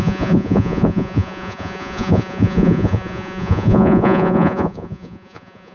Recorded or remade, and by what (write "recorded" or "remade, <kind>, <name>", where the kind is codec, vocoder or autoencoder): remade, vocoder, Vocos